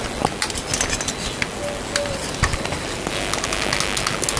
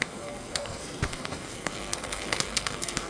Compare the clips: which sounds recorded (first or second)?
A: first